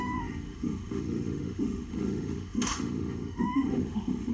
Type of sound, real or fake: fake